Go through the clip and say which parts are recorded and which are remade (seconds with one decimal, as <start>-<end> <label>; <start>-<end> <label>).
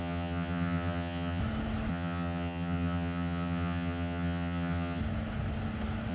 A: 0.0-1.4 remade; 1.4-1.9 recorded; 1.9-5.0 remade; 5.0-6.1 recorded